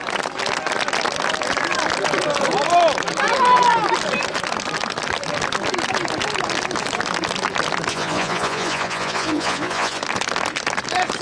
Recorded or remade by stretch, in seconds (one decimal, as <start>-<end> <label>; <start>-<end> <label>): 0.0-7.9 recorded; 7.9-10.0 remade; 10.0-11.2 recorded

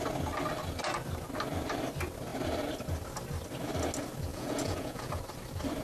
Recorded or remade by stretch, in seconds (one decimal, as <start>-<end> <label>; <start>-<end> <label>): 0.0-4.3 recorded; 4.3-5.2 remade; 5.2-5.8 recorded

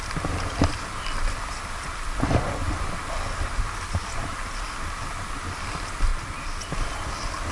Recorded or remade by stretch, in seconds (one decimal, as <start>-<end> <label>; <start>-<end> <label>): 0.0-7.5 recorded

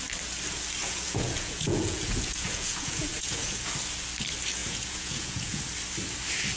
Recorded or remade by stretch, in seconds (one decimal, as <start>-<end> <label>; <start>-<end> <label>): 0.0-0.8 recorded; 0.8-3.7 remade; 3.7-4.6 recorded; 4.6-5.6 remade; 5.6-6.6 recorded

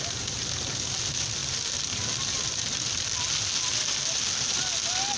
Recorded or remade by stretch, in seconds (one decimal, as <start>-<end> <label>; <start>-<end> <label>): 0.0-5.2 recorded

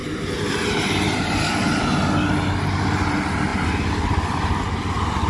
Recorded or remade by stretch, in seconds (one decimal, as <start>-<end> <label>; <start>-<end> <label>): 0.0-5.3 recorded

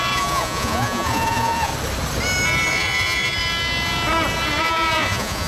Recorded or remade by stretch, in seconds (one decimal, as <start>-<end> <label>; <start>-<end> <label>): 0.0-1.7 remade; 1.7-2.7 recorded; 2.7-3.4 remade; 3.4-4.6 recorded; 4.6-5.5 remade

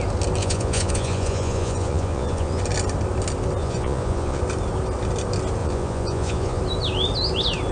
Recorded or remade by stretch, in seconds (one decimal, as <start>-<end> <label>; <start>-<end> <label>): 0.0-0.4 recorded; 0.4-2.6 remade; 2.6-3.6 recorded; 3.6-4.4 remade; 4.4-5.6 recorded; 5.6-6.6 remade; 6.6-7.7 recorded